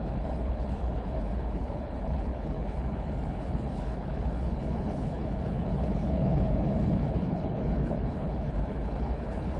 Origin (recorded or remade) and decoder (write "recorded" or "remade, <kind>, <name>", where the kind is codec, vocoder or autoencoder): remade, codec, HILCodec